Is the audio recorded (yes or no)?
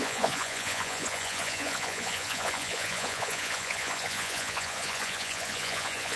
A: no